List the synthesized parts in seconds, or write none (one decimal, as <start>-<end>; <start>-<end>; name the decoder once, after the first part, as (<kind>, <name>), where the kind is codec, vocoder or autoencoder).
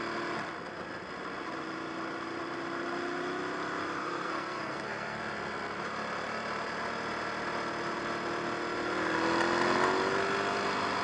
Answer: 4.0-5.2 (codec, SNAC)